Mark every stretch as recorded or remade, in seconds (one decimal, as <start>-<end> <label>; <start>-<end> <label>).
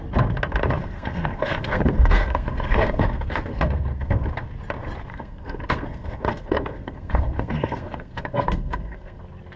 0.0-0.8 recorded; 0.8-4.3 remade; 4.3-5.1 recorded; 5.1-9.2 remade; 9.2-9.6 recorded